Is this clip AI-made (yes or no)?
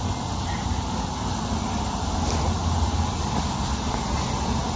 no